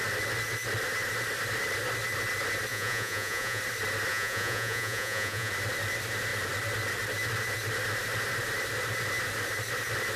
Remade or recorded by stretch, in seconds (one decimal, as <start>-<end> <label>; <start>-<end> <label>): 0.0-2.7 recorded; 2.7-3.6 remade; 3.6-4.1 recorded; 4.1-5.5 remade; 5.5-10.2 recorded